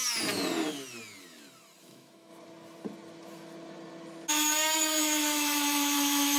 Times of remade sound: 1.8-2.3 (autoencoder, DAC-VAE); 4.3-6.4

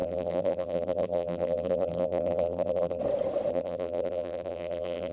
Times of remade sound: 0.0-3.0 (vocoder, BigVGAN v2); 3.5-5.1

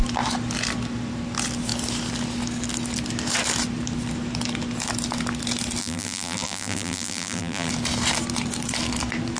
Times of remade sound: 5.8-7.7 (vocoder, BigVGAN v2)

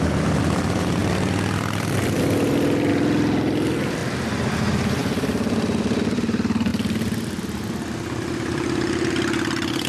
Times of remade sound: 0.0-4.0 (vocoder, BigVGAN v2); 4.6-6.7

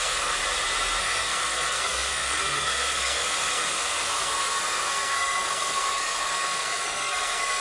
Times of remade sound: 0.0-0.4 (codec, SNAC); 1.0-7.6